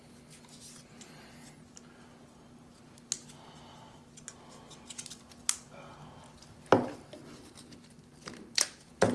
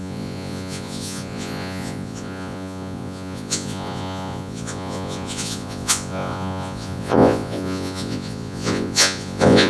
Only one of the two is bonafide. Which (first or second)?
first